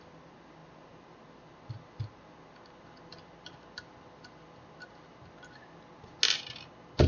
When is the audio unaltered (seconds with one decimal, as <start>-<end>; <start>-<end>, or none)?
0.0-7.1